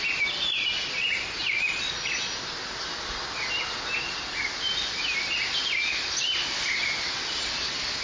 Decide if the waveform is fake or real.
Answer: real